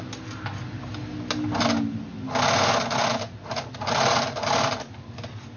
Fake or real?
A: real